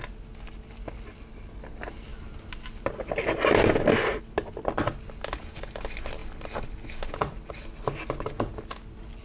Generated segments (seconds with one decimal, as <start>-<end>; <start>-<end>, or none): none